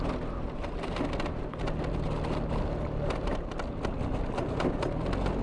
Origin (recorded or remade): recorded